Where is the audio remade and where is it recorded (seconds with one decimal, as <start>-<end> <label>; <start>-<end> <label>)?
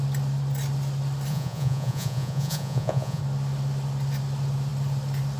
0.0-1.3 recorded; 1.3-3.2 remade; 3.2-5.4 recorded